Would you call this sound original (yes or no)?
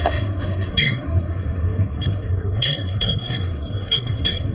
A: no